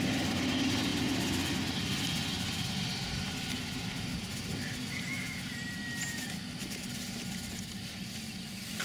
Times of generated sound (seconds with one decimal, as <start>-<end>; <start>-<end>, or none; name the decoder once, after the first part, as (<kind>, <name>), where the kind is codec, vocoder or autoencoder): none

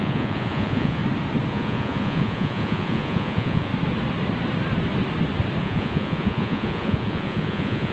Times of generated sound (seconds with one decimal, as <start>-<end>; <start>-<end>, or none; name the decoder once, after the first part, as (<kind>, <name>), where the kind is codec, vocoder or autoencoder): 0.0-1.0 (vocoder, Vocos); 1.5-3.7; 5.6-7.9

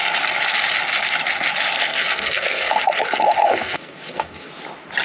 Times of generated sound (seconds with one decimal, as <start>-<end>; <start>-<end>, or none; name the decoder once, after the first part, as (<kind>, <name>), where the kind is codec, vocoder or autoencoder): 1.8-2.8 (codec, SNAC); 3.4-4.5